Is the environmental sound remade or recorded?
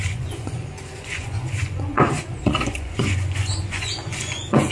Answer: remade